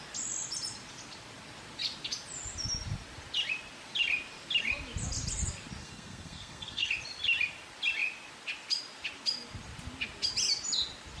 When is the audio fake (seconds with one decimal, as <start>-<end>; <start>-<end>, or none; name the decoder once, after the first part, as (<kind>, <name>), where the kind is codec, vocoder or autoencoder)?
5.8-6.9 (codec, SNAC)